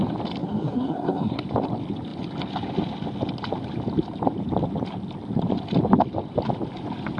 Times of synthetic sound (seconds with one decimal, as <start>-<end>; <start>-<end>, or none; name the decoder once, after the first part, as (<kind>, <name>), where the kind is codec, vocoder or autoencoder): 0.4-1.4 (codec, SNAC)